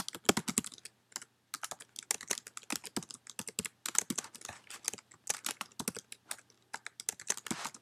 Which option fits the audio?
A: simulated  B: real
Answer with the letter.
B